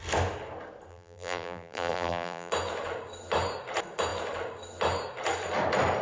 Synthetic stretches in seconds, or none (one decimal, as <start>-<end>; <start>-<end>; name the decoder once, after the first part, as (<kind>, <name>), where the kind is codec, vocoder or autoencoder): 0.9-2.5 (vocoder, BigVGAN v2)